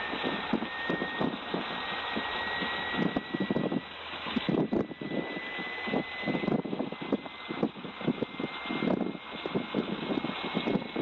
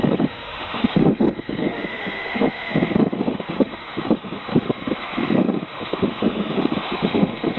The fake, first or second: second